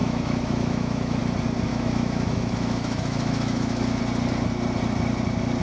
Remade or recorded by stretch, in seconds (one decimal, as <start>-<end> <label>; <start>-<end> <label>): 0.0-1.2 remade; 1.2-1.7 recorded; 1.7-4.0 remade; 4.0-5.6 recorded